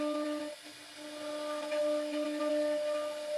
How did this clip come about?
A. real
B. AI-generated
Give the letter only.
A